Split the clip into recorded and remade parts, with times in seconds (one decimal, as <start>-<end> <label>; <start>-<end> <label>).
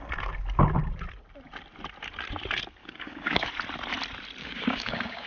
0.0-2.8 recorded; 2.8-3.5 remade; 3.5-4.4 recorded; 4.4-5.3 remade